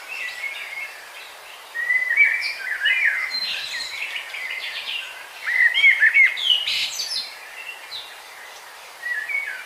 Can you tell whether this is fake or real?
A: fake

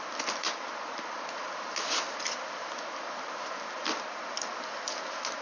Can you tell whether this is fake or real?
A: real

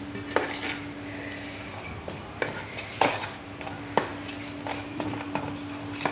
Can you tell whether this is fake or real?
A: real